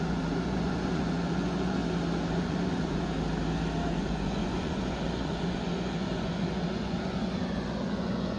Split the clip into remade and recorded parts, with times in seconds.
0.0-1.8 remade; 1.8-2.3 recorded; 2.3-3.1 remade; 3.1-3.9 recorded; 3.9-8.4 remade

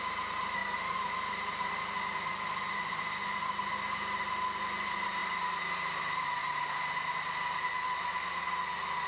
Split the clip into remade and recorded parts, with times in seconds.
0.0-9.1 recorded

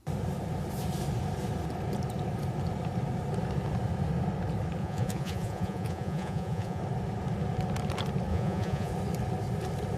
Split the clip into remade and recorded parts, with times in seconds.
0.0-4.8 recorded; 4.8-6.8 remade; 6.8-8.3 recorded; 8.3-8.9 remade; 8.9-10.0 recorded